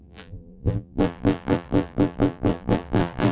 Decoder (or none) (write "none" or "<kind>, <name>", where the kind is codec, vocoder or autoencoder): vocoder, BigVGAN v2